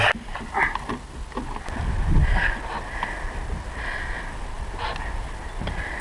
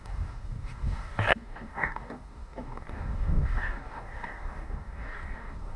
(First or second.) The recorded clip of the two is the first